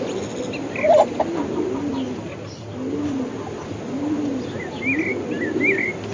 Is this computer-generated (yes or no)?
no